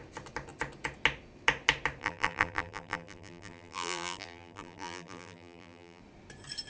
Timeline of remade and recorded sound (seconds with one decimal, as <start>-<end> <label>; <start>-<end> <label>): 0.0-2.0 recorded; 2.0-6.0 remade; 6.0-6.7 recorded